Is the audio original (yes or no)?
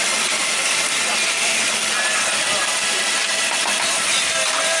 yes